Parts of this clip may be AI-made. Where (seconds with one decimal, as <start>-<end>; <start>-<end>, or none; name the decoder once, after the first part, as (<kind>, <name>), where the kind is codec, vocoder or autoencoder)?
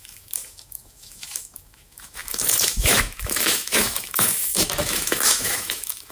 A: 0.0-6.1 (autoencoder, DAC-VAE)